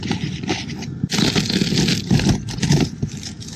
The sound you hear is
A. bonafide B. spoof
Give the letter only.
A